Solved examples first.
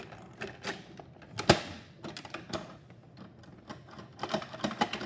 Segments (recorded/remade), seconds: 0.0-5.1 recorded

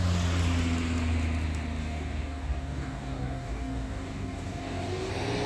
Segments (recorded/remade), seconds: 0.0-1.8 recorded; 1.8-5.1 remade; 5.1-5.5 recorded

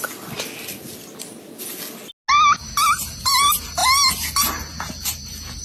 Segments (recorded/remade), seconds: 0.0-5.6 recorded

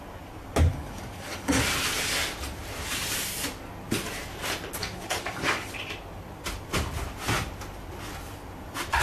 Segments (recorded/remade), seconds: 0.0-0.7 recorded; 0.7-1.6 remade; 1.6-4.8 recorded; 4.8-5.7 remade; 5.7-9.0 recorded

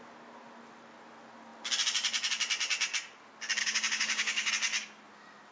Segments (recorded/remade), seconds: 0.0-3.6 recorded; 3.6-4.5 remade; 4.5-5.5 recorded

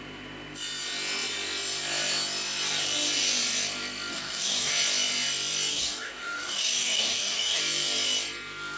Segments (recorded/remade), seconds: 0.0-4.1 recorded; 4.1-4.7 remade; 4.7-5.7 recorded; 5.7-7.6 remade; 7.6-8.8 recorded

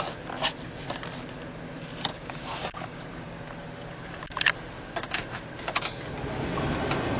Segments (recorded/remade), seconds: 0.0-2.1 recorded; 2.1-3.0 remade; 3.0-7.2 recorded